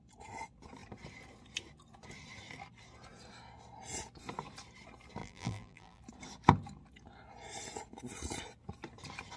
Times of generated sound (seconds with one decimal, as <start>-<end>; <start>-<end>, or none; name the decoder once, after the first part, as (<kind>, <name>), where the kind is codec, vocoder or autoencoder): 5.2-6.0 (vocoder, BigVGAN v2)